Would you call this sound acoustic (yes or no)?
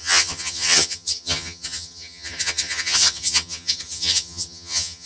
no